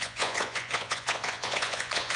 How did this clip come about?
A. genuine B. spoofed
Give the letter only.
B